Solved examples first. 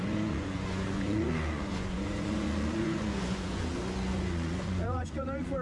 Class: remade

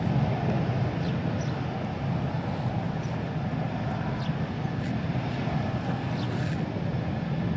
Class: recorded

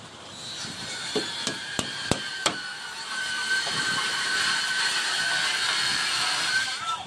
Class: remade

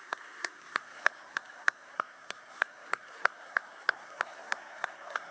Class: remade